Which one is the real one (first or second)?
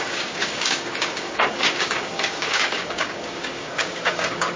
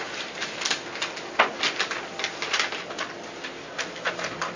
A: second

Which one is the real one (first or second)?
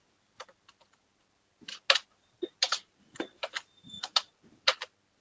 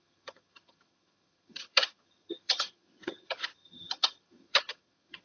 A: first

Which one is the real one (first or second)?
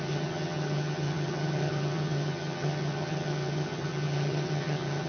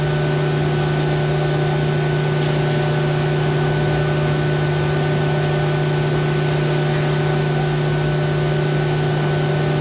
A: second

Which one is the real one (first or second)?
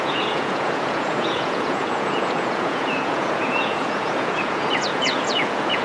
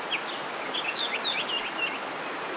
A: second